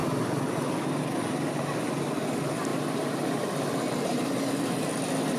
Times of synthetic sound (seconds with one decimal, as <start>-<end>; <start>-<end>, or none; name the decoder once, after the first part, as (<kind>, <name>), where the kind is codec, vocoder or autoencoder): none